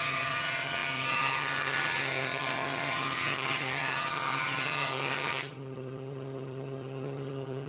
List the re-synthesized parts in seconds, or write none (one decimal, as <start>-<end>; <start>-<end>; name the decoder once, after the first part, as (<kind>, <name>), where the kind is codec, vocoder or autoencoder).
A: 0.0-7.7 (vocoder, HiFi-GAN)